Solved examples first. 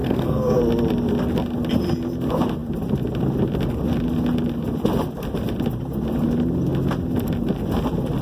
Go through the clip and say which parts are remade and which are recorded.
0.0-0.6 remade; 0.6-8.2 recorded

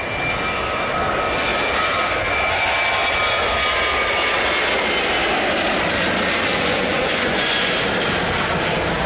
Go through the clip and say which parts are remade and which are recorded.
0.0-6.5 recorded; 6.5-7.7 remade; 7.7-9.1 recorded

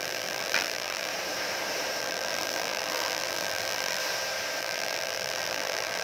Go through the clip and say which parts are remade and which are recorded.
0.0-1.1 remade; 1.1-2.0 recorded; 2.0-4.0 remade; 4.0-4.6 recorded; 4.6-6.0 remade

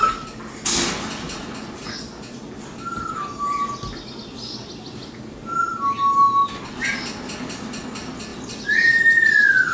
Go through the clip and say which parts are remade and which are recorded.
0.0-9.7 recorded

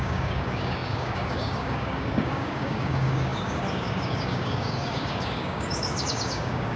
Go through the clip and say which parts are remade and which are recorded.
0.0-6.8 remade

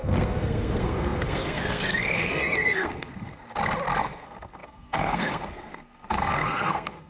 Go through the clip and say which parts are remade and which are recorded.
0.0-3.4 remade; 3.4-4.0 recorded; 4.0-7.1 remade

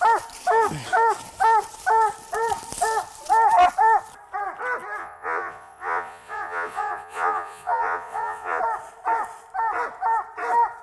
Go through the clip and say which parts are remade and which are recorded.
0.0-5.0 recorded; 5.0-8.6 remade; 8.6-10.8 recorded

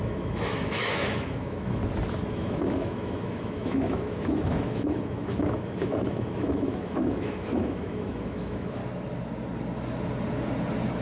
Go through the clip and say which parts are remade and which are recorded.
0.0-1.8 remade; 1.8-2.3 recorded; 2.3-8.8 remade; 8.8-11.0 recorded